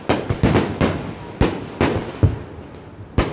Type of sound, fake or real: real